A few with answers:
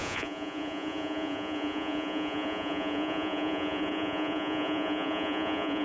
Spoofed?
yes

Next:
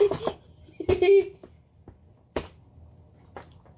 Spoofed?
no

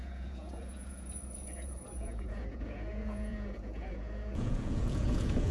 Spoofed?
yes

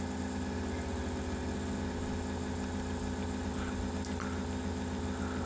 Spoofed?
no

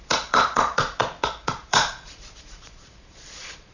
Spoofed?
yes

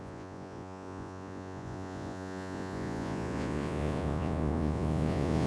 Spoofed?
yes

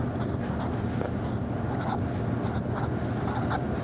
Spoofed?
no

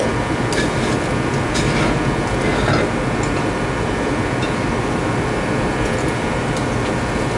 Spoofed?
no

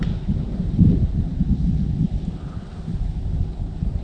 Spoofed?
no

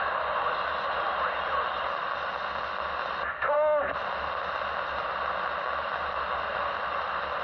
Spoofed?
no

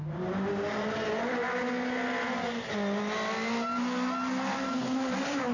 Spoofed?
no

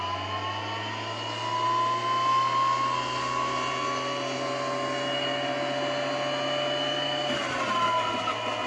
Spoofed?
no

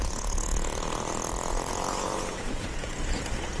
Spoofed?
yes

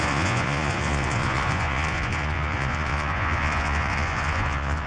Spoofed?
yes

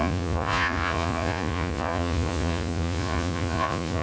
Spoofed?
yes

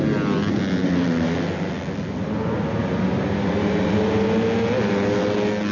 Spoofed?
no